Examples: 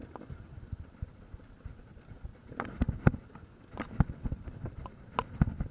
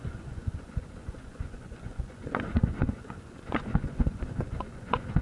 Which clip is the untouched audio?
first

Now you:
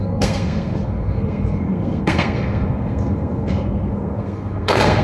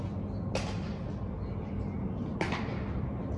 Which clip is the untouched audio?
second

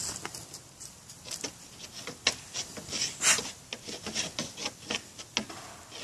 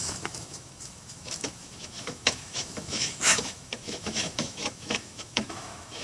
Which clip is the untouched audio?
first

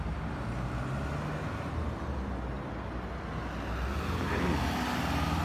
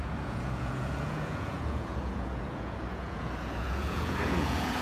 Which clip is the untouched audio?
first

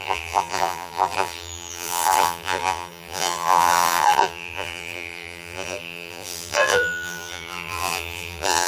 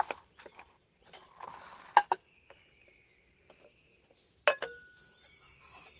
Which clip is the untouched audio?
second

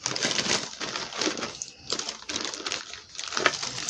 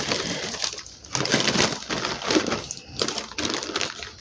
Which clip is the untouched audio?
first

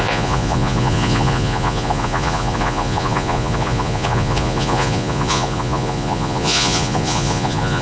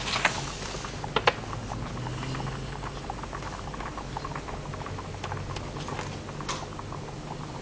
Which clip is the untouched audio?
second